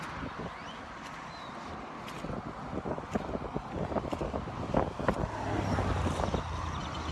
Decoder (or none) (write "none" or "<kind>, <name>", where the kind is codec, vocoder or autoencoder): none